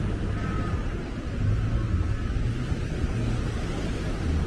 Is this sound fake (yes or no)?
no